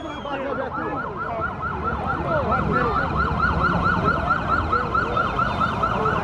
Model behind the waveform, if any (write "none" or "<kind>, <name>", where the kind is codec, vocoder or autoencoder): none